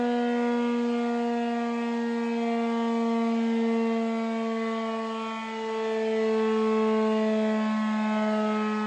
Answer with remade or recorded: recorded